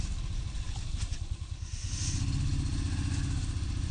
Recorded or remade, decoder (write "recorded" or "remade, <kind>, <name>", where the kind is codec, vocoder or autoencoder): recorded